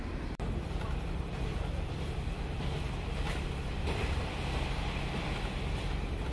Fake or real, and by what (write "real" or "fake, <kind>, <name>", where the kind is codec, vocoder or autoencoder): fake, vocoder, BigVGAN v2